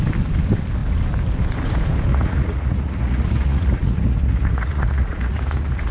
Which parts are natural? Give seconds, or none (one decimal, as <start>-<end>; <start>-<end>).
0.0-2.1